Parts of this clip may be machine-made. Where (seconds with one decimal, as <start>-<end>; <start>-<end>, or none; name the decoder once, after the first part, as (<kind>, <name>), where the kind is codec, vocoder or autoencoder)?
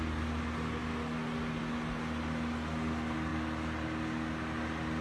none